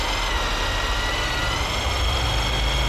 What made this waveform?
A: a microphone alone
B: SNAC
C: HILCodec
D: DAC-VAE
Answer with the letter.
A